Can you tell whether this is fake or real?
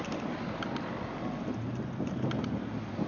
real